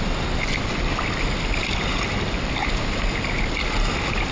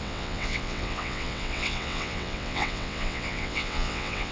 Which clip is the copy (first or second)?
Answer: second